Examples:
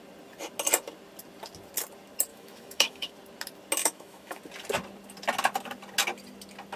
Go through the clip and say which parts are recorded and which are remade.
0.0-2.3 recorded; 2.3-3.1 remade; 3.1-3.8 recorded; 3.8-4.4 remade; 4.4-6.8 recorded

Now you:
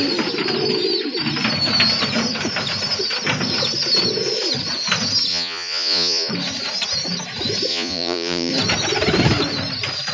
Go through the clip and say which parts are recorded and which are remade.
0.0-5.3 recorded; 5.3-6.3 remade; 6.3-7.7 recorded; 7.7-8.5 remade; 8.5-10.1 recorded

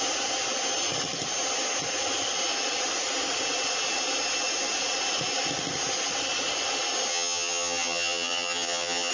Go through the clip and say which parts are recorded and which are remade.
0.0-7.1 recorded; 7.1-9.1 remade

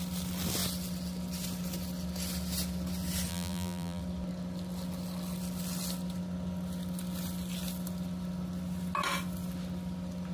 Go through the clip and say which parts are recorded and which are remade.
0.0-3.3 recorded; 3.3-4.0 remade; 4.0-10.3 recorded